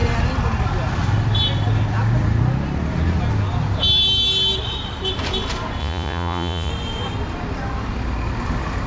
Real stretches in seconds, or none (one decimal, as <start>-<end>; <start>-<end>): 0.0-5.8; 6.7-8.9